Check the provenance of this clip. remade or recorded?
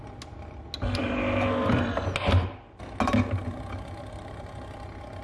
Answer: recorded